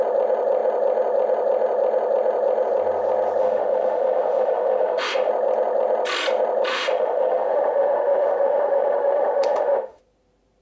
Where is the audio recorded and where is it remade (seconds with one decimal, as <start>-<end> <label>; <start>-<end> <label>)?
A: 0.0-3.4 recorded; 3.4-5.3 remade; 5.3-6.7 recorded; 6.7-10.0 remade; 10.0-10.6 recorded